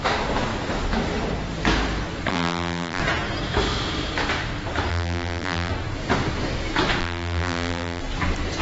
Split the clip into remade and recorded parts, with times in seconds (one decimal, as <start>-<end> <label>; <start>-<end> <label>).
0.0-2.3 recorded; 2.3-3.0 remade; 3.0-4.9 recorded; 4.9-5.7 remade; 5.7-7.0 recorded; 7.0-8.0 remade; 8.0-8.6 recorded